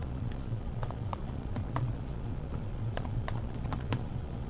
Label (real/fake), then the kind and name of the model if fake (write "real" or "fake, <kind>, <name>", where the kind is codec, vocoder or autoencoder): fake, vocoder, Vocos